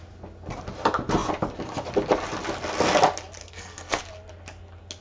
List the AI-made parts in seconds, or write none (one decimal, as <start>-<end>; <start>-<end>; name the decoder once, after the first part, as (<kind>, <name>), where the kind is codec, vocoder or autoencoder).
3.4-4.0 (codec, SNAC)

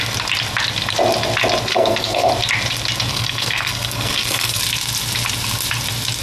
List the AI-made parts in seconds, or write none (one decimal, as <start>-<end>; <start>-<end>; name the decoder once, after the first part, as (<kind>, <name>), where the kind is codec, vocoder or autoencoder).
1.7-2.3 (codec, SNAC); 3.1-4.6